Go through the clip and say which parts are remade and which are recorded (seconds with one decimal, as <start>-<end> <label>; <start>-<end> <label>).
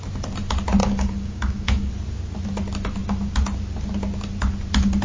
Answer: 0.0-0.8 recorded; 0.8-1.9 remade; 1.9-5.0 recorded